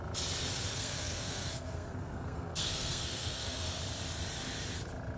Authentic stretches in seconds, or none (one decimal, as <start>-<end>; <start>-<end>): 0.0-0.7; 3.8-5.2